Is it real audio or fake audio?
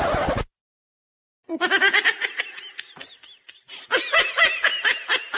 real